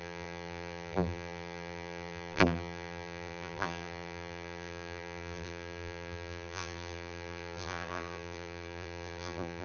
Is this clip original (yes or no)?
no